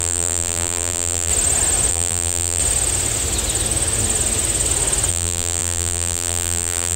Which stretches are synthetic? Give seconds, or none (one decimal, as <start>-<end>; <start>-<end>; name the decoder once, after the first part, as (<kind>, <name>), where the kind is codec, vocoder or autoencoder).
0.0-1.3 (vocoder, BigVGAN v2); 1.9-2.6; 5.1-7.0

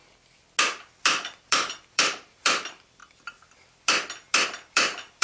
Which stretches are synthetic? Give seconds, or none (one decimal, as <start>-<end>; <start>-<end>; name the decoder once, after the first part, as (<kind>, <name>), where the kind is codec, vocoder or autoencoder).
1.0-3.0 (vocoder, BigVGAN v2); 4.7-5.2

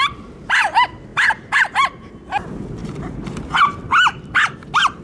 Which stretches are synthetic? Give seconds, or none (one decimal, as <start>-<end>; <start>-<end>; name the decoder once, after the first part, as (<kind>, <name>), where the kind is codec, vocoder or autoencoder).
2.8-3.7 (vocoder, BigVGAN v2)

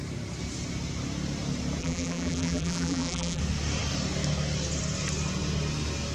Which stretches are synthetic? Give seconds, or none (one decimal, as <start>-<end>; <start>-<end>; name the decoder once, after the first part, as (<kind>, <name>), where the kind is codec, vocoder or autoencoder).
1.8-3.4 (vocoder, BigVGAN v2)

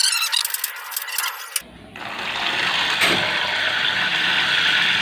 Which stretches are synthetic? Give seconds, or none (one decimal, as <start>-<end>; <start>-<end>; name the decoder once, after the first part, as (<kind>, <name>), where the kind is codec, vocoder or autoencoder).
none

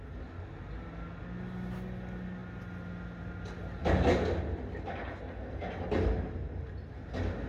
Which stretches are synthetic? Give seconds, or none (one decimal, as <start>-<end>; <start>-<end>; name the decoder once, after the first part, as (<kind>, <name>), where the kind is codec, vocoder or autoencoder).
6.4-7.1 (vocoder, BigVGAN v2)